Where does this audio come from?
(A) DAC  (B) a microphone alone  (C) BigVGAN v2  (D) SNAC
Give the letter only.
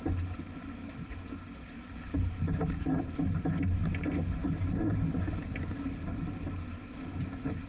B